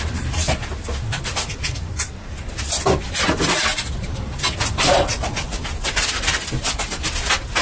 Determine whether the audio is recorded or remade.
recorded